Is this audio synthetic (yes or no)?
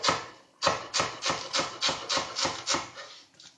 no